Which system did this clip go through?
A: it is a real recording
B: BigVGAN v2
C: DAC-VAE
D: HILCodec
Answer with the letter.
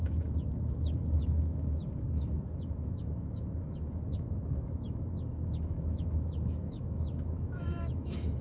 C